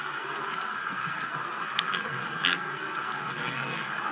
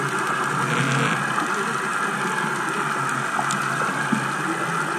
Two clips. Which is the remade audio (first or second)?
first